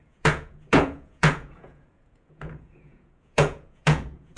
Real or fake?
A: fake